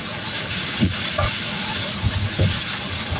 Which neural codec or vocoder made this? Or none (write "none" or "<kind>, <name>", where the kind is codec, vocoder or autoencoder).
vocoder, Vocos